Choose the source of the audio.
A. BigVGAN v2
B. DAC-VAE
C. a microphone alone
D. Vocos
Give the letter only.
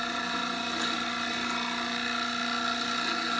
C